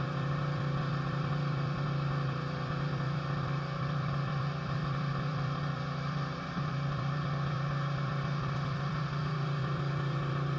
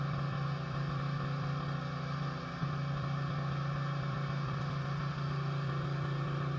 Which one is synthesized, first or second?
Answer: first